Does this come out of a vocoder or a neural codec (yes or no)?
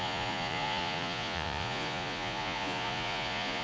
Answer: yes